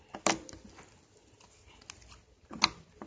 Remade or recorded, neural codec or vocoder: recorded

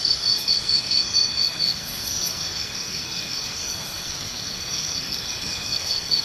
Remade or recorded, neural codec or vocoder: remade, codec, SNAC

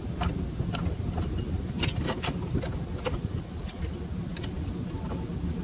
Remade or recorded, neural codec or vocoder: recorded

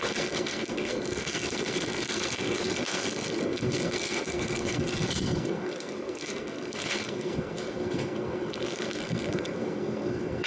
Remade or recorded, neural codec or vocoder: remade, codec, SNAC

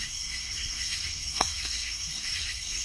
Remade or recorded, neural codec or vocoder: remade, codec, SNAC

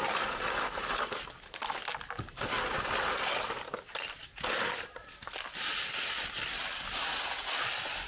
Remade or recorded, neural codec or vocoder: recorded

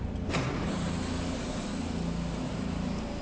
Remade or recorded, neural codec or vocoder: recorded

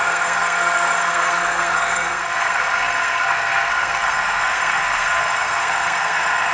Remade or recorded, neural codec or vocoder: remade, codec, SNAC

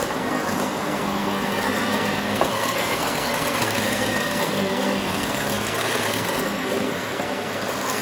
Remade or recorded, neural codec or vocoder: remade, codec, SNAC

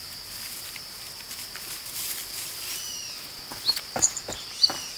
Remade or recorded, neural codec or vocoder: recorded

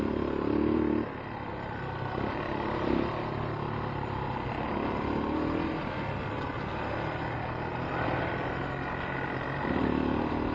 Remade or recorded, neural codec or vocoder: recorded